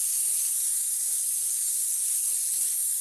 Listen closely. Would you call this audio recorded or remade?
recorded